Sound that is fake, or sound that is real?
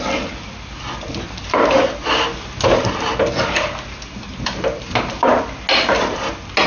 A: real